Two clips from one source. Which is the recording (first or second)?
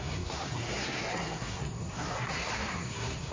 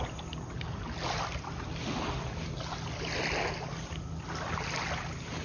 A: second